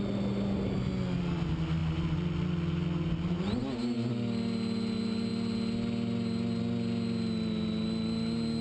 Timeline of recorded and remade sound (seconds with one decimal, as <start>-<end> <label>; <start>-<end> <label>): 0.0-8.6 recorded

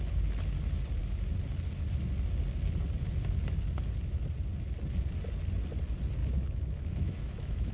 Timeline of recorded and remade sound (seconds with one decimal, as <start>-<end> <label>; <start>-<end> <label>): 0.0-6.2 recorded; 6.2-7.7 remade

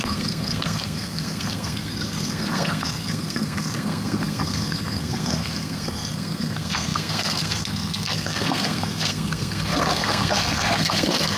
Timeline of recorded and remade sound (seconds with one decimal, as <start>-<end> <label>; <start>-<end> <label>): 0.0-11.4 remade

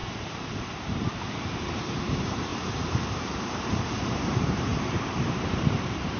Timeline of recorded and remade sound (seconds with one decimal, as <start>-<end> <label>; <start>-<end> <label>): 0.0-0.6 recorded; 0.6-6.2 remade

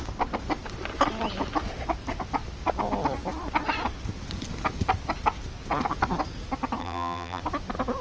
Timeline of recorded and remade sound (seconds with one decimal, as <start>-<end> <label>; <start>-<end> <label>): 0.0-6.8 recorded; 6.8-7.4 remade; 7.4-8.0 recorded

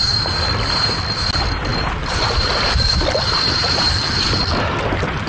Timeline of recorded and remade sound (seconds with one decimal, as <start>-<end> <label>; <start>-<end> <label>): 0.0-1.7 recorded; 1.7-3.4 remade; 3.4-5.3 recorded

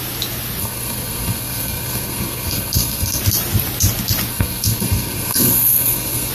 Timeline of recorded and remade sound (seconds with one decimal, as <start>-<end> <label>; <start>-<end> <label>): 0.0-0.6 recorded; 0.6-3.2 remade; 3.2-4.3 recorded; 4.3-6.3 remade

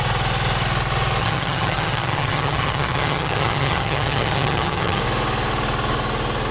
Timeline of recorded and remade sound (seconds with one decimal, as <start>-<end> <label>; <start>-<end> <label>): 0.0-1.2 recorded; 1.2-5.0 remade; 5.0-6.5 recorded